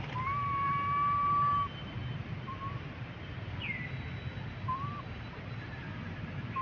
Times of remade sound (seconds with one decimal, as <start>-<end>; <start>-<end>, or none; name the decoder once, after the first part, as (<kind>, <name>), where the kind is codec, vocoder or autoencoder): none